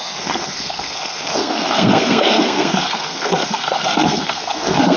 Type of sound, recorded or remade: remade